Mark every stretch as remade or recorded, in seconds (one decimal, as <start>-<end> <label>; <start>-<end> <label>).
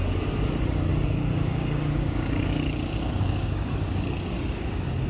0.0-0.9 recorded; 0.9-4.0 remade; 4.0-5.1 recorded